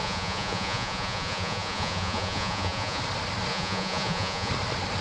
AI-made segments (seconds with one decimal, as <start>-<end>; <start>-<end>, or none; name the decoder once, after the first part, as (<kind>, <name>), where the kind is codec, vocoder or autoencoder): 0.0-3.0 (vocoder, Vocos); 3.5-4.5